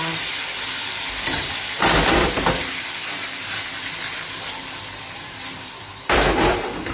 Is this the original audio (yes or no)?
no